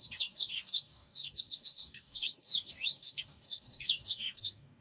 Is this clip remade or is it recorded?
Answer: remade